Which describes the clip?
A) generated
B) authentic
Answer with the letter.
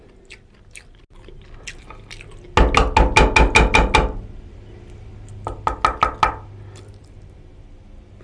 B